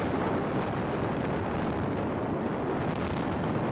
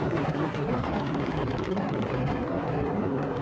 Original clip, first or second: first